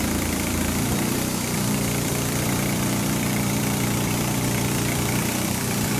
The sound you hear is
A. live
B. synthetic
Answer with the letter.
B